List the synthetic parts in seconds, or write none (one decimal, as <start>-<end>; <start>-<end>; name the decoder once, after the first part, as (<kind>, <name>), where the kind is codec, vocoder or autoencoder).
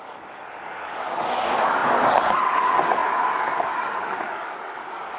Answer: 0.0-5.2 (codec, DAC)